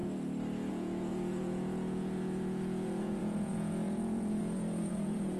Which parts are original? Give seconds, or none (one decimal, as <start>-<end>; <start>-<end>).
0.0-0.7